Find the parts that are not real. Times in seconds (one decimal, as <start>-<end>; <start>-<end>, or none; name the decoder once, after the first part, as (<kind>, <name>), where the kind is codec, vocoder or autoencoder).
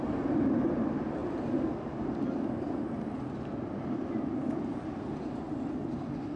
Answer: none